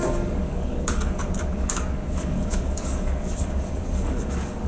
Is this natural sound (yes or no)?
no